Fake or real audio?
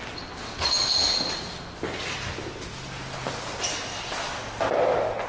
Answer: real